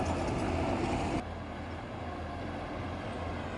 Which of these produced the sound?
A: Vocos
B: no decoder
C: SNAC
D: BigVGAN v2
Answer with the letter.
B